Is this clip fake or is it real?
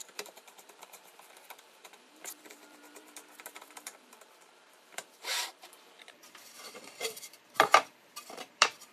fake